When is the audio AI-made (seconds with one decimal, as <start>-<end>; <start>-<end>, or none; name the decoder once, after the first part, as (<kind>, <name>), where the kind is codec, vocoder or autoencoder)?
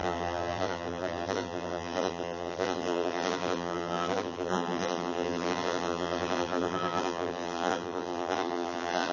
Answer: 0.0-9.1 (vocoder, BigVGAN v2)